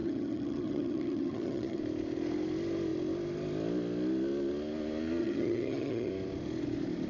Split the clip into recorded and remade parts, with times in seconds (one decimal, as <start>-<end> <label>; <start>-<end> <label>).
0.0-1.8 remade; 1.8-5.2 recorded; 5.2-6.1 remade; 6.1-7.1 recorded